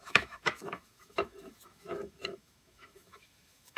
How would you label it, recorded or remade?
remade